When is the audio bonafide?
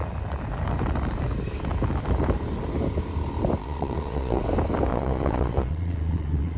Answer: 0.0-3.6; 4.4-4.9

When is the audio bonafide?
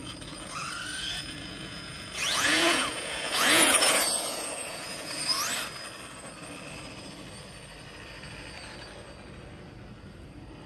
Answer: 5.2-10.7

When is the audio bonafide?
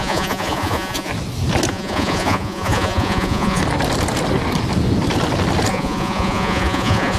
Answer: 1.1-1.7; 3.6-5.7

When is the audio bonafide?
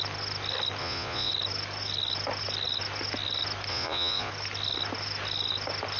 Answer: 0.0-0.8; 1.3-3.7; 4.3-6.0